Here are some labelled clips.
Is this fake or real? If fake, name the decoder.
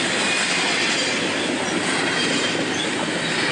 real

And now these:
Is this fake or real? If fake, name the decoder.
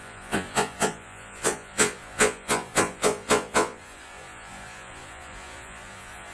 fake, vocoder, Vocos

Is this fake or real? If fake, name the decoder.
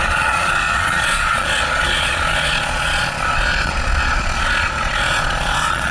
fake, vocoder, Vocos